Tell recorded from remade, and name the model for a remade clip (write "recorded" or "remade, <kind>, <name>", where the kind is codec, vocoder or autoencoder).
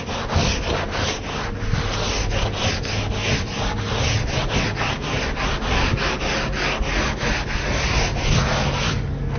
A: recorded